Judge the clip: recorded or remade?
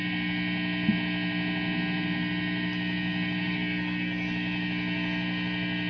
recorded